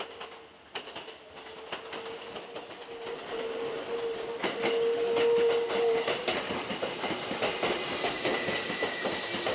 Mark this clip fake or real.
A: real